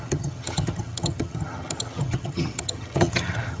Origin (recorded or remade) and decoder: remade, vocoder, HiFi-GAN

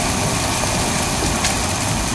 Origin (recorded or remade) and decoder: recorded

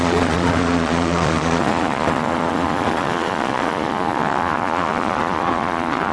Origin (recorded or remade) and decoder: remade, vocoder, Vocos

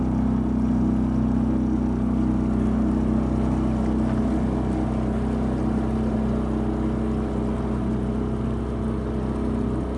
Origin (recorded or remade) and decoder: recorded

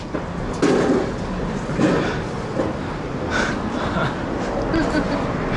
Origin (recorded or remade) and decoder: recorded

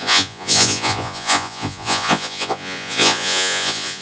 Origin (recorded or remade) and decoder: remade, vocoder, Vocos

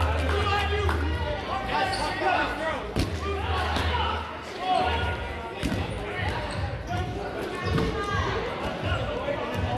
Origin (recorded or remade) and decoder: recorded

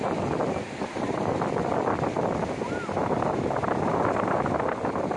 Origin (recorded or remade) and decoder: recorded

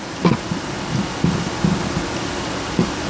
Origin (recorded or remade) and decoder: recorded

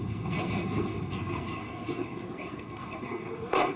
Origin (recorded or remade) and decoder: remade, codec, SNAC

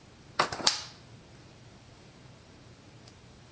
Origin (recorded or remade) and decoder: remade, vocoder, BigVGAN v2